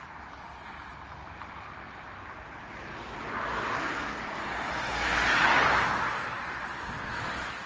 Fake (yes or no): no